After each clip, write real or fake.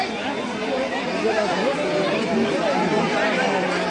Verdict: real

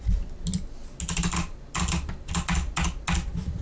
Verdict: real